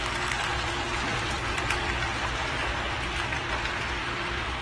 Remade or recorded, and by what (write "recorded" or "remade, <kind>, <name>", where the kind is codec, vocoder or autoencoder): remade, vocoder, BigVGAN v2